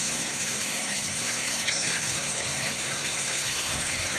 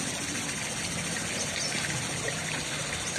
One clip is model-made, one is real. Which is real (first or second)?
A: second